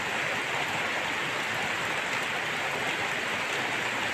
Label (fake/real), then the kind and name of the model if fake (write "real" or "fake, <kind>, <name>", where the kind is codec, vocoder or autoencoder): real